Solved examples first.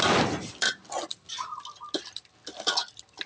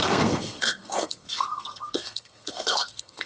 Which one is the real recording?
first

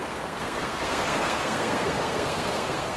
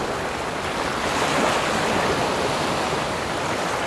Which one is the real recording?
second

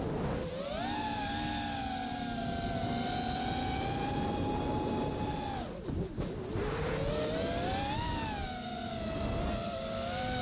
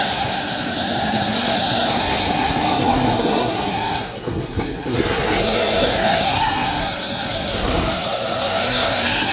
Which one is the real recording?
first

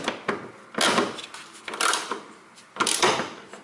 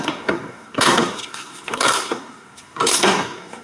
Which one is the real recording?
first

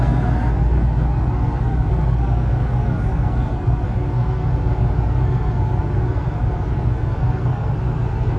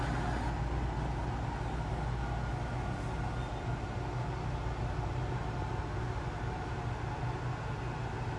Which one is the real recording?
second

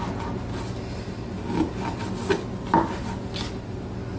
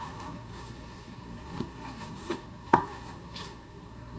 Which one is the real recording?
first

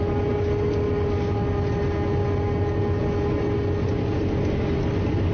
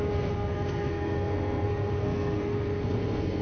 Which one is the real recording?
first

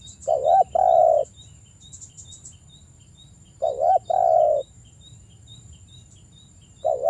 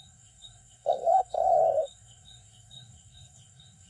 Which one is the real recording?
first